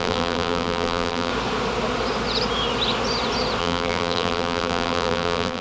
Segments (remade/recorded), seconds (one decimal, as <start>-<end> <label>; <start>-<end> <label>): 0.0-1.3 remade; 1.3-3.6 recorded; 3.6-5.6 remade